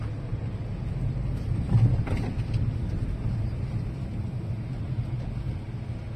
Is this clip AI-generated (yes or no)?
no